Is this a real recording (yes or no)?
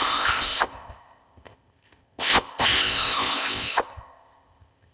no